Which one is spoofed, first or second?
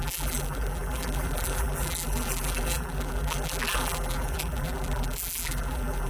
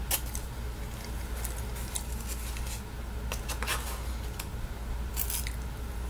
first